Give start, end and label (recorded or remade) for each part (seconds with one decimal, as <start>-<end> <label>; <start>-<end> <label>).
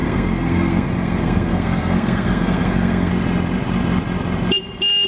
0.0-3.1 remade; 3.1-5.1 recorded